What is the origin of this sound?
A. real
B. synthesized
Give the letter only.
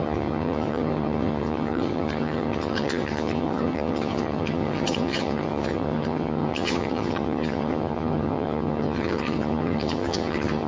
B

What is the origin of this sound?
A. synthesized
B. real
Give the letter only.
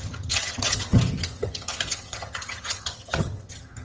A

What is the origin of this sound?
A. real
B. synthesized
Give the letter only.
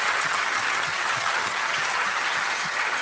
B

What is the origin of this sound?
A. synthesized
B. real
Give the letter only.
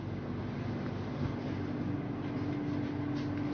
B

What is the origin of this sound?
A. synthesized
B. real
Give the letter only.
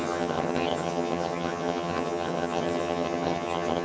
A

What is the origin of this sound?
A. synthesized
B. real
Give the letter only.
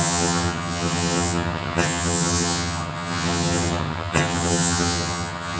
A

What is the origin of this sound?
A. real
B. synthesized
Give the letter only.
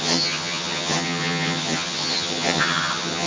B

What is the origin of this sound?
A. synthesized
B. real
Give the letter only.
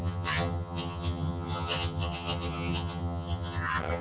A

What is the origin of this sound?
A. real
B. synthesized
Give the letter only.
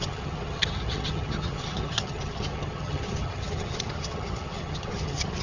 B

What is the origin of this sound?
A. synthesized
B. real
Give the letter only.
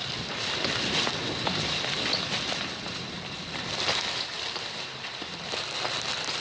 B